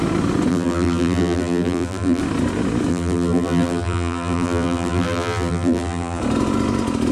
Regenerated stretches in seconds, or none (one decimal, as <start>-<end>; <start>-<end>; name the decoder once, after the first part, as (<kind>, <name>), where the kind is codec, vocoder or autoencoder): 0.5-2.2 (vocoder, BigVGAN v2); 2.9-6.2